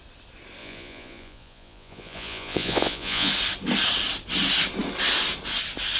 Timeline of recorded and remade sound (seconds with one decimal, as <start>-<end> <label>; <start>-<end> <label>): 0.0-0.6 recorded; 0.6-3.3 remade; 3.3-6.0 recorded